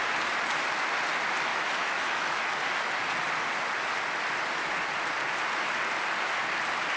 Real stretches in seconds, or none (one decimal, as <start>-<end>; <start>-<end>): 0.0-1.5; 2.5-7.0